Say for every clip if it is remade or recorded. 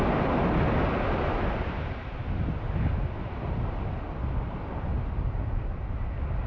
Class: recorded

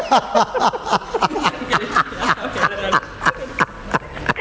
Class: recorded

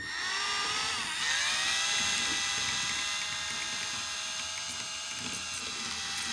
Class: recorded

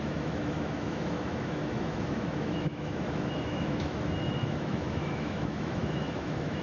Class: remade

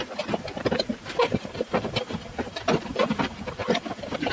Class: remade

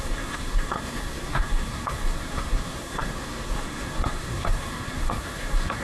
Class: remade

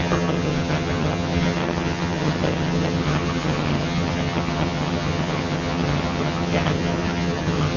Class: remade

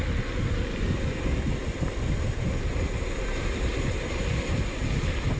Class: recorded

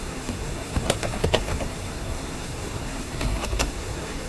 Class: remade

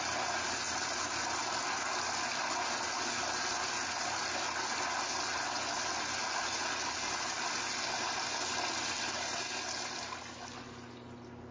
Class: recorded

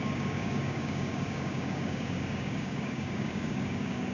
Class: remade